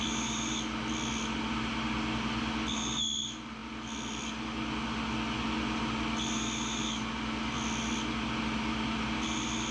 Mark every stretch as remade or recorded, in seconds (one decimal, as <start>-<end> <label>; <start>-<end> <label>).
0.0-9.7 recorded